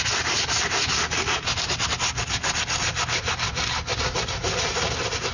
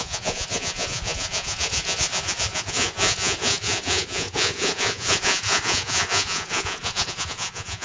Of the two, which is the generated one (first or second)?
second